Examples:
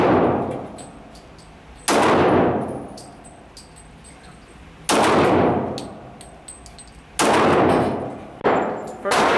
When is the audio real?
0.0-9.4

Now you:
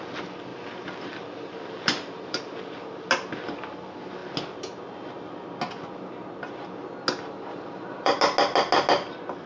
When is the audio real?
0.0-0.5; 2.6-7.5; 8.2-9.5